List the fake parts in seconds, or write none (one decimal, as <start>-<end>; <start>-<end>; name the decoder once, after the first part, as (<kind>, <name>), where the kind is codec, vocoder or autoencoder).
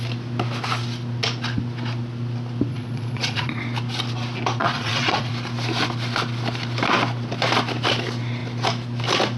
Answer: 2.7-3.6 (vocoder, Vocos); 4.6-5.3